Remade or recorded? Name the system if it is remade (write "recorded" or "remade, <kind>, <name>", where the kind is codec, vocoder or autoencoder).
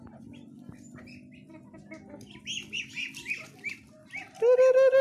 recorded